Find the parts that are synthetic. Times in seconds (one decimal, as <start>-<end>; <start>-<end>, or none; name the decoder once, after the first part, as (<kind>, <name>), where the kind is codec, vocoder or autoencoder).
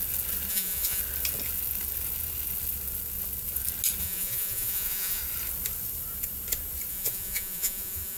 0.5-1.0 (vocoder, Vocos); 4.0-5.2; 6.9-8.2